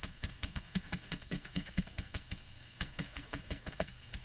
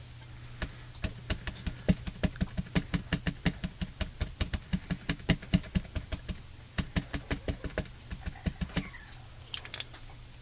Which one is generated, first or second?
first